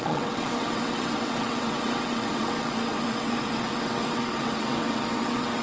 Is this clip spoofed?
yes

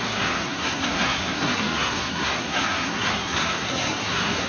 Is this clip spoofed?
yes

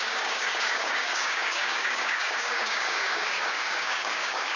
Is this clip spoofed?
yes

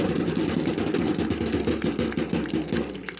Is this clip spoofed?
no